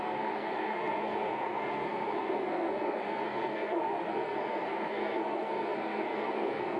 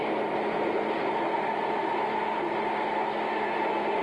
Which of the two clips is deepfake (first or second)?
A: first